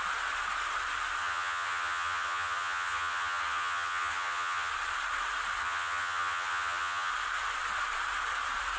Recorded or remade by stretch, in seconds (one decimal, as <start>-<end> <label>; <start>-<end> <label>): 0.0-1.2 recorded; 1.2-4.7 remade; 4.7-5.6 recorded; 5.6-7.1 remade; 7.1-8.8 recorded